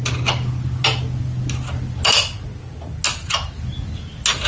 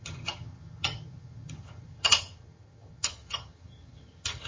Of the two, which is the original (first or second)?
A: first